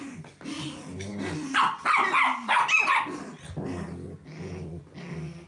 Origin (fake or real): real